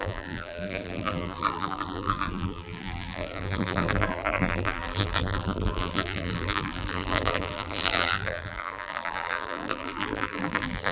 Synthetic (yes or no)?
yes